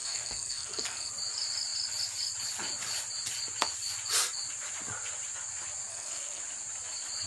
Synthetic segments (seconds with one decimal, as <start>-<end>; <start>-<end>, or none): 0.0-1.1; 5.9-6.4